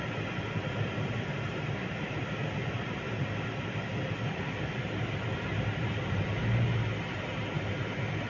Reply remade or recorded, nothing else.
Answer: recorded